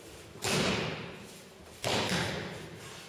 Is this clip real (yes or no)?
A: yes